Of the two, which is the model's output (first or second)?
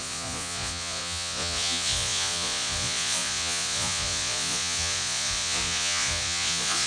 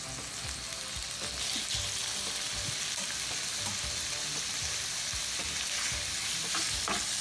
first